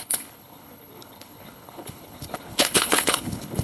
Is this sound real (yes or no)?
no